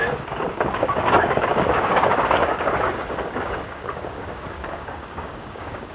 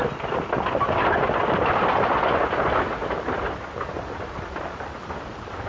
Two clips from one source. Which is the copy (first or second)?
first